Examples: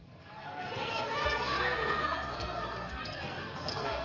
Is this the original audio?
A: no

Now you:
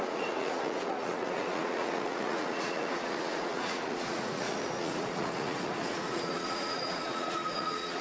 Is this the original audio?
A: no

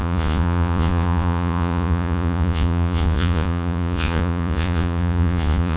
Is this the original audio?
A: no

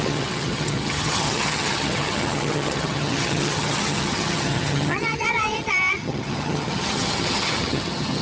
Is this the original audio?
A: no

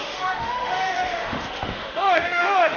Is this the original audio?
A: no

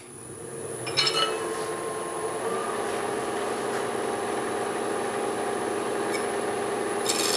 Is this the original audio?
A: yes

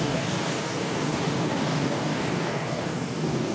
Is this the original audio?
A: no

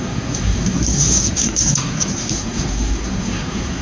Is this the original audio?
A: no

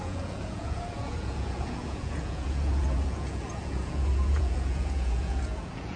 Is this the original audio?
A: no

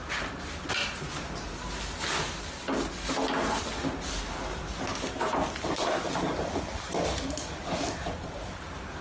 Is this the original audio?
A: yes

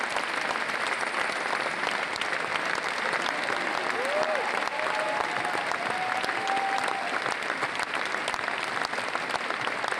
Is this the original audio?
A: yes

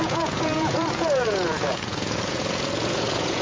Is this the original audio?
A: no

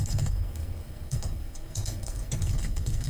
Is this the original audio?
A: no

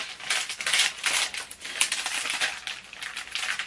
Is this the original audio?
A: yes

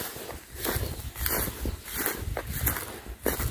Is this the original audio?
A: yes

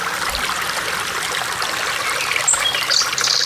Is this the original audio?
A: yes